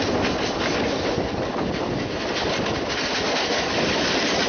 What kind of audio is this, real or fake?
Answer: real